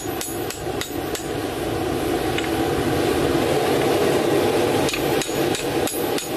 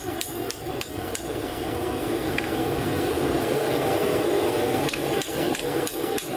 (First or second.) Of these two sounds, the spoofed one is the second